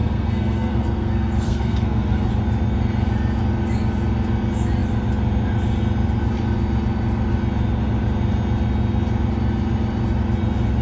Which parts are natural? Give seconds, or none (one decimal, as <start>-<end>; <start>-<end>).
2.3-10.8